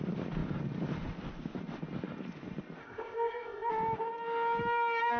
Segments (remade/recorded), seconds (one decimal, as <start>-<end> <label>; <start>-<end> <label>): 0.0-2.8 recorded; 2.8-3.7 remade; 3.7-5.2 recorded